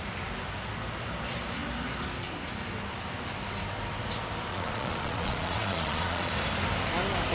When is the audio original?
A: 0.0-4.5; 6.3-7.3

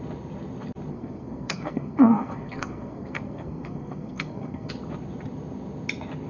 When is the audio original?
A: 0.0-0.9; 4.7-6.3